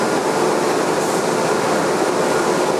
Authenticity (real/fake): real